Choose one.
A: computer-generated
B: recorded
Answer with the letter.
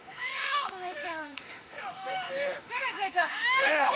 A